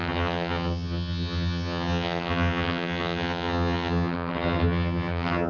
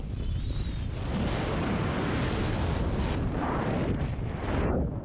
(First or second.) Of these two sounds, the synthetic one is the first